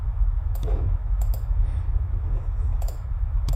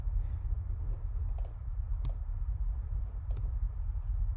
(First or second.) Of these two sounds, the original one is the second